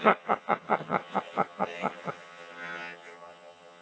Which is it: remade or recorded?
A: remade